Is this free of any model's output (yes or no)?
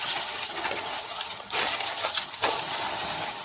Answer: no